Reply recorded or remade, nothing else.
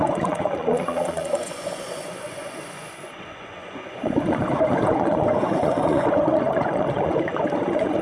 remade